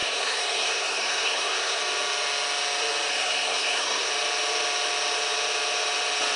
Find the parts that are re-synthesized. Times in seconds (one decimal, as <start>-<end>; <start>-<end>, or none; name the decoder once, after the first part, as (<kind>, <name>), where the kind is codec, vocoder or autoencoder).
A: 0.0-1.8 (codec, SNAC); 3.1-4.1